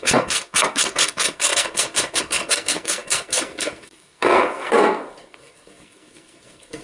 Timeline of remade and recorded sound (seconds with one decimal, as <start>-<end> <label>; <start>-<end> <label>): 0.0-6.8 remade